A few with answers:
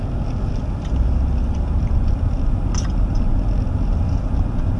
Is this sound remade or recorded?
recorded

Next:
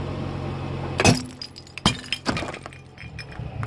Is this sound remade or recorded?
recorded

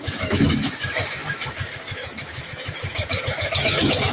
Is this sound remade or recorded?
remade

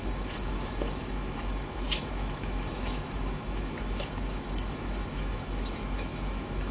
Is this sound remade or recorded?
remade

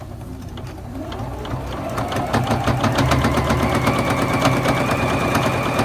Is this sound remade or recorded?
recorded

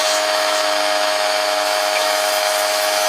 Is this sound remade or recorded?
remade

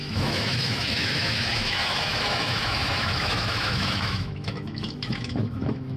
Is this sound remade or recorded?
remade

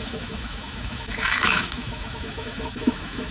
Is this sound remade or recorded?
remade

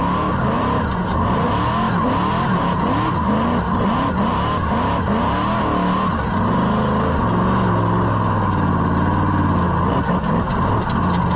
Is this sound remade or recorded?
recorded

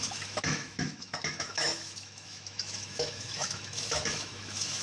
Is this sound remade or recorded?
remade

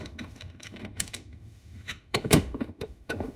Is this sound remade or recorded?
remade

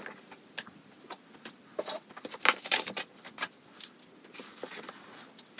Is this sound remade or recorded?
recorded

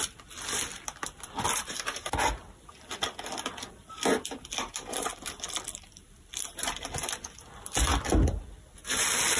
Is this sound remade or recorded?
recorded